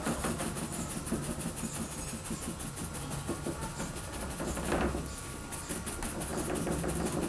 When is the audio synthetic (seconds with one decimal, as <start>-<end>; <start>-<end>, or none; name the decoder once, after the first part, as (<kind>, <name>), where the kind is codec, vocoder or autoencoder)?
none

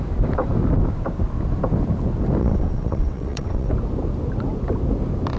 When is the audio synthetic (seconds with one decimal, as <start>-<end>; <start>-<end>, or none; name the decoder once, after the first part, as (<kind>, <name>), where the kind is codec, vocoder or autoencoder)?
2.4-3.7 (vocoder, WaveNeXt)

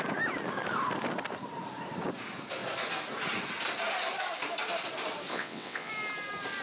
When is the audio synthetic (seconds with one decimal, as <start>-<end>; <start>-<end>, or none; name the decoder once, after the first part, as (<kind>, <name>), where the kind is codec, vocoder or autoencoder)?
5.3-5.9 (vocoder, WaveNeXt)

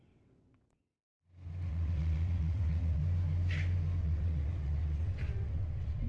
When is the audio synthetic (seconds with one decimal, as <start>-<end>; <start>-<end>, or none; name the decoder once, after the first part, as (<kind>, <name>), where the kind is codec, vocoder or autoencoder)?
0.0-0.9 (vocoder, WaveNeXt); 1.7-3.0; 4.0-6.1

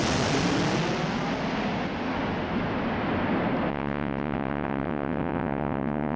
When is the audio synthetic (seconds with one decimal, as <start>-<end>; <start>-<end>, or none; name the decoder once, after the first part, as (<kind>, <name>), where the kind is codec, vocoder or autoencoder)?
3.7-6.2 (vocoder, WaveNeXt)

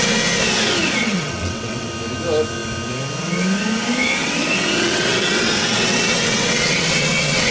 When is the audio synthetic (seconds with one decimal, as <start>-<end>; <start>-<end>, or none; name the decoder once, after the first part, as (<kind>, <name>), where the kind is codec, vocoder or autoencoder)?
1.0-1.9 (vocoder, WaveNeXt); 4.2-7.5